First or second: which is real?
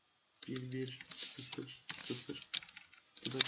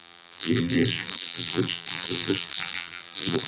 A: first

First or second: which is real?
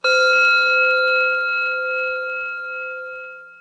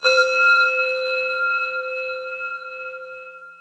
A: first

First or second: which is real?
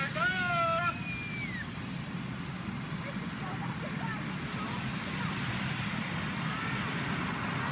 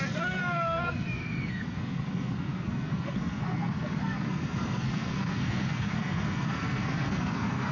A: first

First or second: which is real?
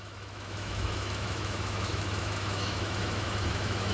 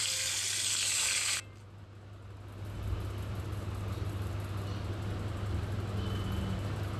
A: second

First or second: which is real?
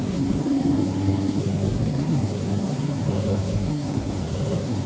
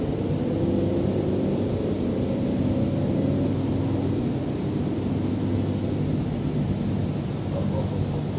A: second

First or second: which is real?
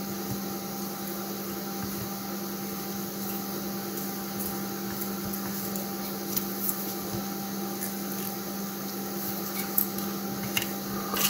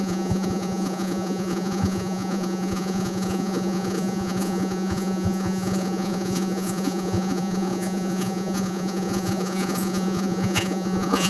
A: first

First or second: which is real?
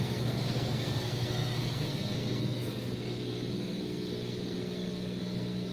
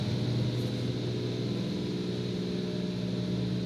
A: second